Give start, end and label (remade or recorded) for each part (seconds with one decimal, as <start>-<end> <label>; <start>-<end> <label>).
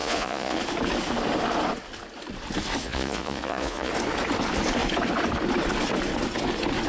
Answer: 0.0-0.6 remade; 0.6-2.8 recorded; 2.8-3.9 remade; 3.9-6.9 recorded